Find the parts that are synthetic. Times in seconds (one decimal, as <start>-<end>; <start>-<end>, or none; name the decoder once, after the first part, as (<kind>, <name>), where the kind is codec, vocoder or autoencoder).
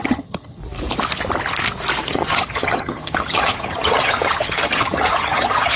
0.0-0.6 (vocoder, HiFi-GAN); 2.1-5.8